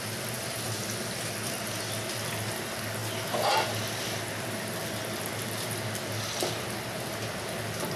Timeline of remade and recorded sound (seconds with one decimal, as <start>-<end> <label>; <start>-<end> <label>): 0.0-8.0 recorded